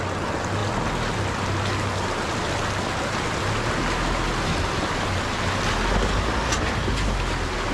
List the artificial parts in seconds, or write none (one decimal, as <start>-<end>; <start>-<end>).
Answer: none